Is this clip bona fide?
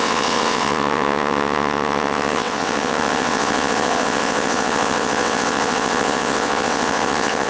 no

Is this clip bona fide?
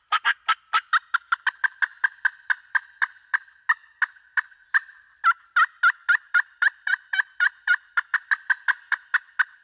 yes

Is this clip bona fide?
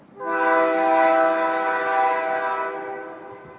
yes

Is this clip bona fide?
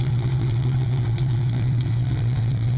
no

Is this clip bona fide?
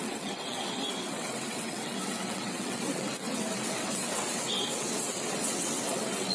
no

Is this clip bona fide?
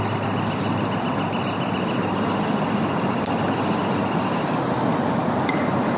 yes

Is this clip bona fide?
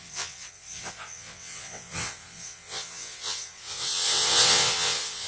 no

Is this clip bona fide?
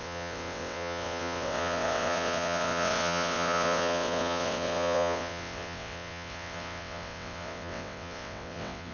no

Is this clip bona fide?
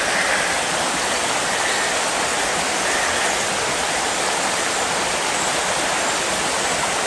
yes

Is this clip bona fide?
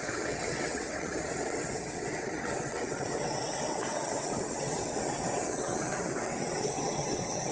no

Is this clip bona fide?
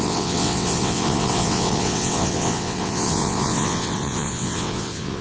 no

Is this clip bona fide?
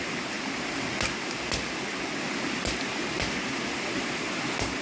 yes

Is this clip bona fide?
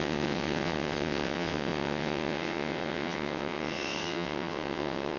no